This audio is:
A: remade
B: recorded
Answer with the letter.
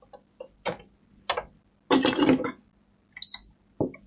B